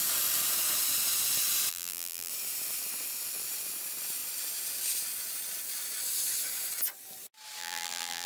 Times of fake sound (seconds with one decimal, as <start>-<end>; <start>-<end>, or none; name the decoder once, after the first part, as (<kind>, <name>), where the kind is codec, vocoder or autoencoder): 1.7-2.3 (vocoder, BigVGAN v2); 7.6-8.3